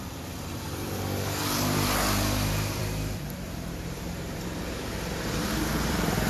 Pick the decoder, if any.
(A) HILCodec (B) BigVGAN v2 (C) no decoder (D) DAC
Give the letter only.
B